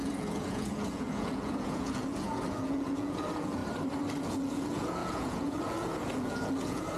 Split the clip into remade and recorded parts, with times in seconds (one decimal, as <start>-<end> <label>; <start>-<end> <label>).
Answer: 0.0-3.6 remade; 3.6-4.2 recorded; 4.2-7.0 remade